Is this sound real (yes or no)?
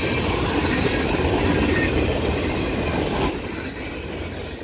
yes